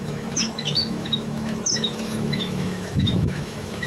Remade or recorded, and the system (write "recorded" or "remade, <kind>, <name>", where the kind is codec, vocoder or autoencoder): remade, autoencoder, DAC-VAE